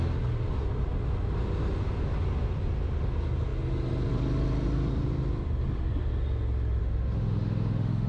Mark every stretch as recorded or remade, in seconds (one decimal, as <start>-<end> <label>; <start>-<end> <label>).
0.0-6.8 recorded; 6.8-8.1 remade

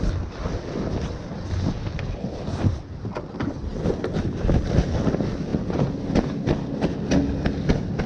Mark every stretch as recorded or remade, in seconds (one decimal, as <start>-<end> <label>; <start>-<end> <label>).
0.0-8.1 recorded

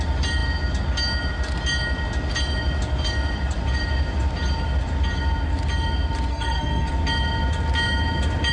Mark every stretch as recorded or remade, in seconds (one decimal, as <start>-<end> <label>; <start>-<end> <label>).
0.0-6.3 recorded; 6.3-6.9 remade; 6.9-8.5 recorded

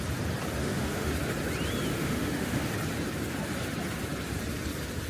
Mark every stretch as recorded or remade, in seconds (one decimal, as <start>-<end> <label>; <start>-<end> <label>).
0.0-0.6 recorded; 0.6-1.1 remade; 1.1-1.9 recorded; 1.9-2.6 remade; 2.6-5.1 recorded

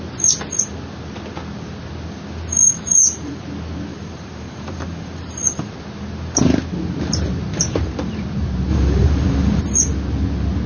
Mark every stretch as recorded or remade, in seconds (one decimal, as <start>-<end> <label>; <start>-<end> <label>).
0.0-2.6 recorded; 2.6-3.4 remade; 3.4-3.9 recorded; 3.9-5.7 remade; 5.7-8.7 recorded; 8.7-9.6 remade; 9.6-10.7 recorded

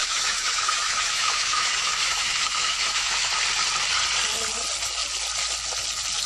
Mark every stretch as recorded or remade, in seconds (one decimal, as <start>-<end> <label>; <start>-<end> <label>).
0.0-3.3 remade; 3.3-6.3 recorded

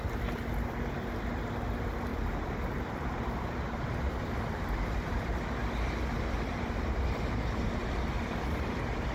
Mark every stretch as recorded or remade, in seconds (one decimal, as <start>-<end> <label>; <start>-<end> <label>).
0.0-2.1 recorded; 2.1-5.4 remade; 5.4-9.1 recorded

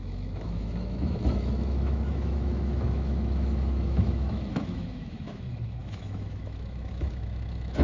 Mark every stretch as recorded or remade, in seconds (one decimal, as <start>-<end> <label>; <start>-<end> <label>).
0.0-7.8 remade